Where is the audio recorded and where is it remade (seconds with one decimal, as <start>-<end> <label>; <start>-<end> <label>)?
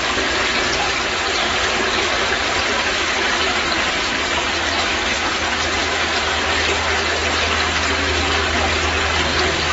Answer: 0.0-1.4 recorded; 1.4-4.6 remade; 4.6-9.7 recorded